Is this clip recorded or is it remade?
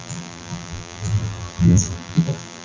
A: remade